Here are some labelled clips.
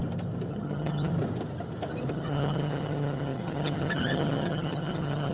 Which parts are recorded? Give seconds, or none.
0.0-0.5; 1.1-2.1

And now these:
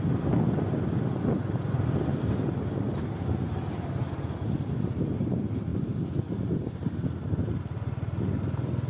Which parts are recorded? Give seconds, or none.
0.0-8.9